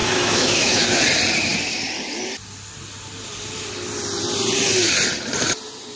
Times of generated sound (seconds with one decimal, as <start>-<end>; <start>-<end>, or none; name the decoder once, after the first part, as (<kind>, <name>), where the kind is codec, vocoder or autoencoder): 0.0-1.0 (autoencoder, DAC-VAE)